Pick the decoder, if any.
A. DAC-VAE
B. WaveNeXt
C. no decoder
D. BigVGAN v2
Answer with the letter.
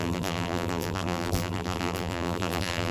D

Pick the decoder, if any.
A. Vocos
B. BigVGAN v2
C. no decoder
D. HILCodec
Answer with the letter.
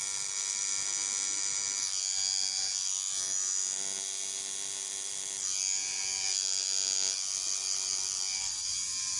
C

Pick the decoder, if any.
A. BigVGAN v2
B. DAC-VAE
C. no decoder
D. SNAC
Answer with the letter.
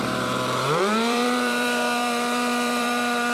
A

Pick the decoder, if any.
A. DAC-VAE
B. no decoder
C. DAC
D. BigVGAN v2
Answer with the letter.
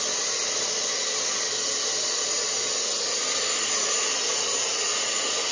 B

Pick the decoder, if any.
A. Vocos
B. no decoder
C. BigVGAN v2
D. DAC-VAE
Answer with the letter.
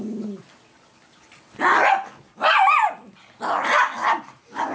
B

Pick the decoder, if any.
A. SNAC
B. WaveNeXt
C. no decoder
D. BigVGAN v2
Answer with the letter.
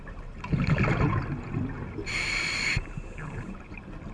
C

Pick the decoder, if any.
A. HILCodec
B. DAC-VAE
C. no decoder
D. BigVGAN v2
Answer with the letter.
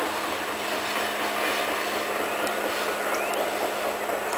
C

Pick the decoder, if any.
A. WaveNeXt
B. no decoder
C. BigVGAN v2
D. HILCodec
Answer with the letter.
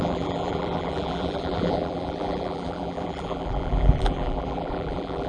C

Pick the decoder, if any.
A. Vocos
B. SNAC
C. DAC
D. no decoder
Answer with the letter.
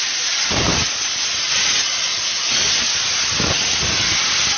D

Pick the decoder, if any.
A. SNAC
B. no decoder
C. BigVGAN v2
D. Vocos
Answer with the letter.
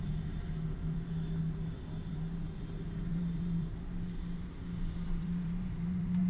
C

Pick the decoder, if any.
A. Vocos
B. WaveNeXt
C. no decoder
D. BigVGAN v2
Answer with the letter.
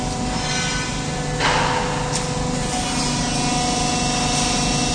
C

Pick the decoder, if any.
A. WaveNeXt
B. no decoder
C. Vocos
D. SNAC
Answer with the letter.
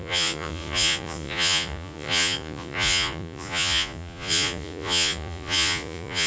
C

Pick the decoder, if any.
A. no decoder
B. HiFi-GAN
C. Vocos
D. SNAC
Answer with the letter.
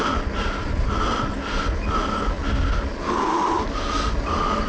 A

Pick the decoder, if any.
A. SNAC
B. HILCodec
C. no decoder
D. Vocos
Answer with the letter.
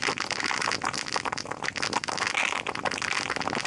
C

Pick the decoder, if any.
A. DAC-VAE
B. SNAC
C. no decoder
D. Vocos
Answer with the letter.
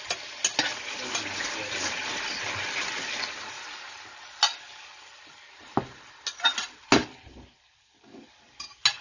C